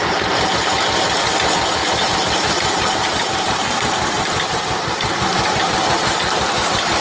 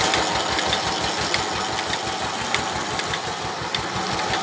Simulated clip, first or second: first